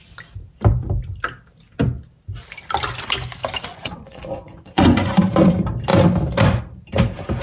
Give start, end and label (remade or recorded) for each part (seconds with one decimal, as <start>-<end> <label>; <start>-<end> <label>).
0.0-3.7 recorded; 3.7-5.1 remade; 5.1-7.4 recorded